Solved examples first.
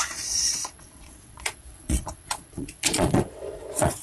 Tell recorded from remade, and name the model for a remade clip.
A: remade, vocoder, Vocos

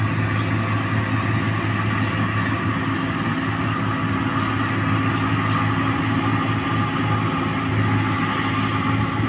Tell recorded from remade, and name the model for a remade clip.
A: recorded